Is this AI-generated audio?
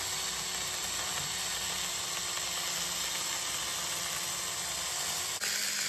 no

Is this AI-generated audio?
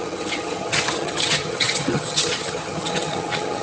yes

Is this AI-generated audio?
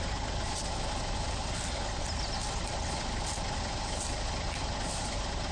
no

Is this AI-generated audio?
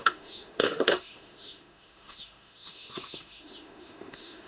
yes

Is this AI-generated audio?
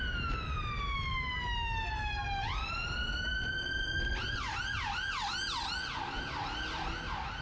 no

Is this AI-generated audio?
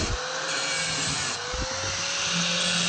no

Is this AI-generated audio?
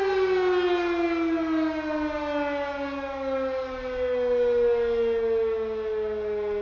no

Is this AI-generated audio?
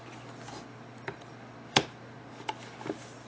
no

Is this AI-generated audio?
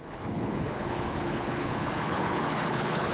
yes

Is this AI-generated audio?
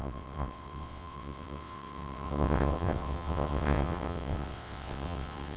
yes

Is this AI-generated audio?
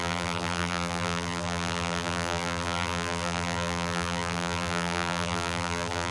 yes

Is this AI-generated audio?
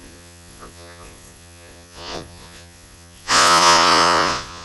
yes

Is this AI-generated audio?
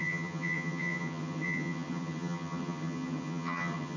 yes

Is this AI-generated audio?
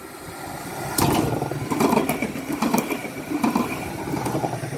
no